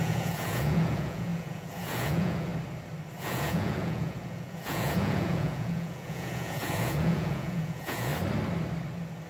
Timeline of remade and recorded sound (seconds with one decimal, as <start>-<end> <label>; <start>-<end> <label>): 0.0-2.5 remade; 2.5-3.2 recorded; 3.2-8.1 remade; 8.1-9.3 recorded